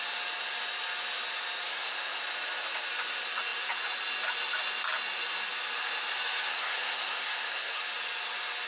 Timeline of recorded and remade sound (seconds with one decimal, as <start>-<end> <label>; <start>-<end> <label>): 0.0-1.7 recorded; 1.7-2.2 remade; 2.2-6.5 recorded; 6.5-7.8 remade; 7.8-8.7 recorded